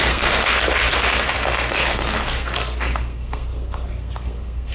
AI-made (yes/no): yes